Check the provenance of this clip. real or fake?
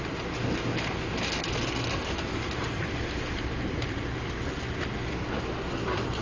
real